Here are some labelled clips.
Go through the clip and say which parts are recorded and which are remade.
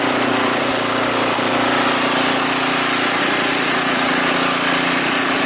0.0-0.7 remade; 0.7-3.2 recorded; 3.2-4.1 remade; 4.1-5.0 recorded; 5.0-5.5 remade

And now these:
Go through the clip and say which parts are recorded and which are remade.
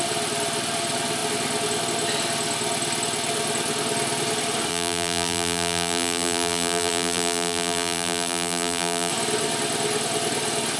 0.0-4.7 recorded; 4.7-9.1 remade; 9.1-10.8 recorded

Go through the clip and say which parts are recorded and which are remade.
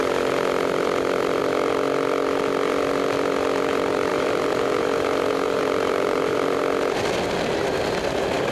0.0-4.1 recorded; 4.1-6.6 remade; 6.6-8.5 recorded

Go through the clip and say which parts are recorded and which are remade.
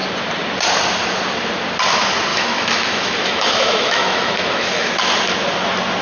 0.0-2.3 recorded; 2.3-4.9 remade; 4.9-6.0 recorded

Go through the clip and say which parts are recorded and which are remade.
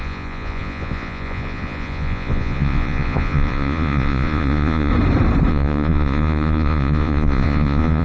0.0-4.9 remade; 4.9-5.5 recorded; 5.5-8.0 remade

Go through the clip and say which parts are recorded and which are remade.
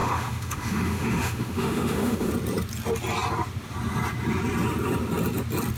0.0-2.3 remade; 2.3-5.8 recorded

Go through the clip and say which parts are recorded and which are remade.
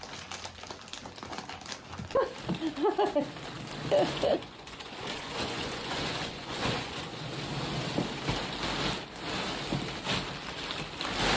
0.0-4.1 recorded; 4.1-7.2 remade; 7.2-11.4 recorded